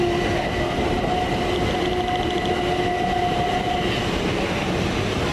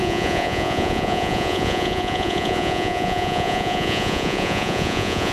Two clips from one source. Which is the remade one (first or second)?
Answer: second